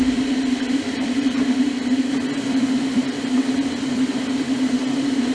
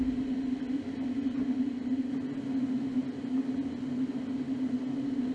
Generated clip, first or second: first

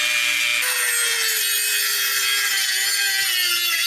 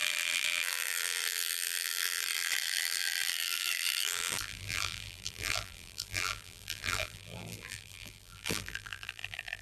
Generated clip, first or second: second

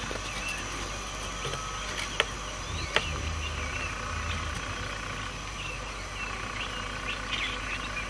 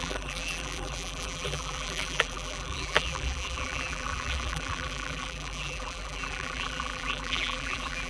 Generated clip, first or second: second